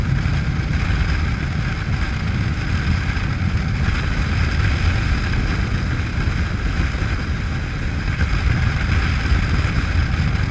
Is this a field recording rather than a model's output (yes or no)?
yes